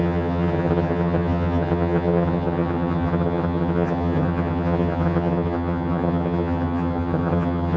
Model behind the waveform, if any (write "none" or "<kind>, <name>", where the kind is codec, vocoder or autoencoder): vocoder, HiFi-GAN